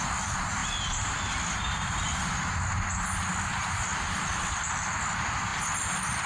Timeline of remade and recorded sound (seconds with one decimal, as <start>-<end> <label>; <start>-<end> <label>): 0.0-0.6 remade; 0.6-4.4 recorded; 4.4-6.3 remade